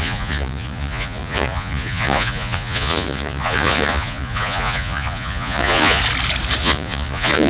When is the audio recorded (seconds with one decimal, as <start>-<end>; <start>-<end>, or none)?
6.0-6.6